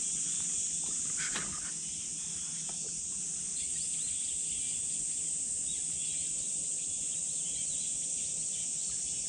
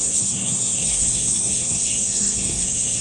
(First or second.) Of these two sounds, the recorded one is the first